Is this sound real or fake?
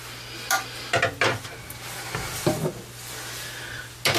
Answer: real